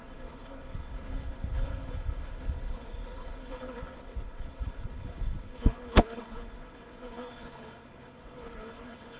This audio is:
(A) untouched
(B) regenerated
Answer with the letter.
B